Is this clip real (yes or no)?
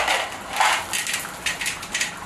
yes